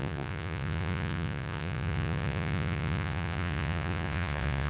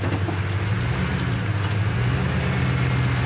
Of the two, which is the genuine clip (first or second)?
second